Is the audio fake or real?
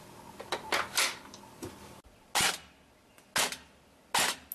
real